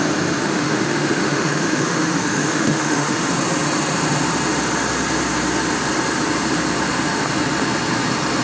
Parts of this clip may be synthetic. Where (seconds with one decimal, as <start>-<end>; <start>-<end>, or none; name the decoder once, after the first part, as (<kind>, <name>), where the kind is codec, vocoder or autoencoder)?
0.4-3.3 (autoencoder, DAC-VAE)

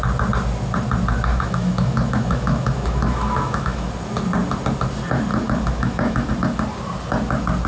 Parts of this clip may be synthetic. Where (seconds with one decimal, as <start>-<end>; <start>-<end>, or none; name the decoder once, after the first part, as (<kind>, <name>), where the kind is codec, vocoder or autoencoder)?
1.3-3.9 (autoencoder, DAC-VAE); 5.3-6.3